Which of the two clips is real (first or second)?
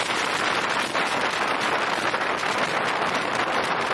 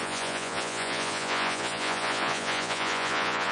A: first